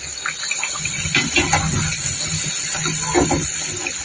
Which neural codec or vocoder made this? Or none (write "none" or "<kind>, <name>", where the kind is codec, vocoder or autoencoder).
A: none